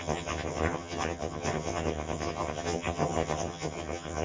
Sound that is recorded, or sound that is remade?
remade